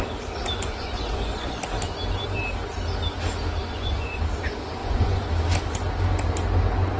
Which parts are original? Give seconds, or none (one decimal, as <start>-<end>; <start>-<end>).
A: 0.0-0.6; 1.6-3.6; 4.2-4.8; 5.3-7.0